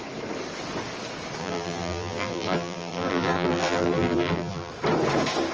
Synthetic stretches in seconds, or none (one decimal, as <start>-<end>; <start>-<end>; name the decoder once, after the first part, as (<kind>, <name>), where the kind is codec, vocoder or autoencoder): 1.4-4.7 (vocoder, BigVGAN v2)